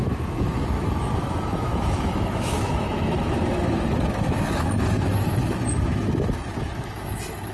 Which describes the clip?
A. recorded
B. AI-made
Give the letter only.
B